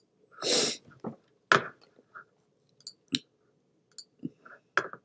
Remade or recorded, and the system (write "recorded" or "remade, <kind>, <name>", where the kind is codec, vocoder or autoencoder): recorded